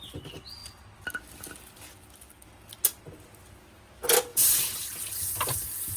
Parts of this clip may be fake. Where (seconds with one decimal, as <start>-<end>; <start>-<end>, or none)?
none